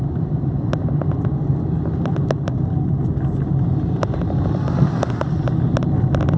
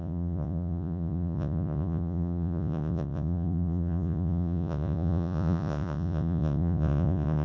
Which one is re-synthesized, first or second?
second